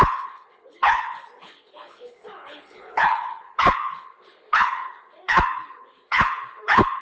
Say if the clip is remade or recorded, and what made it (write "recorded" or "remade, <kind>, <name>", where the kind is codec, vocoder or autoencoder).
remade, codec, HILCodec